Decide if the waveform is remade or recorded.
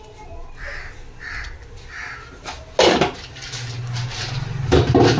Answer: recorded